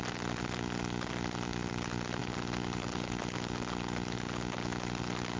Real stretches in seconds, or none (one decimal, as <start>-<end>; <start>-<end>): 0.0-5.4